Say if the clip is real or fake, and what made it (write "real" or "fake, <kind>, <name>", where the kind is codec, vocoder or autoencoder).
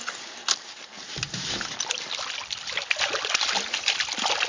real